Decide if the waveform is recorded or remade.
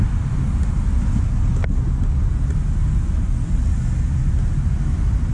recorded